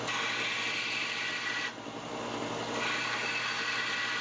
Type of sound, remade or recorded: recorded